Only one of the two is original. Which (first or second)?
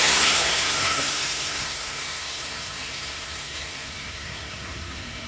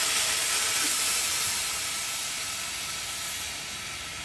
second